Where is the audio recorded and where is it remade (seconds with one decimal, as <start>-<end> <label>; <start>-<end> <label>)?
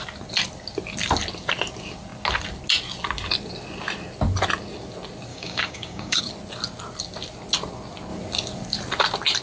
0.0-5.3 recorded; 5.3-6.2 remade; 6.2-9.4 recorded